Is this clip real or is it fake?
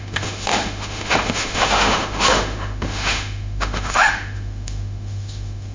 fake